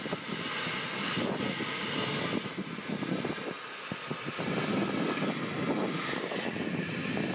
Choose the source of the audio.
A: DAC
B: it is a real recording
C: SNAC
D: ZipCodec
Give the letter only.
B